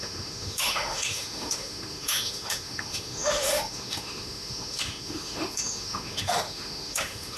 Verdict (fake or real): fake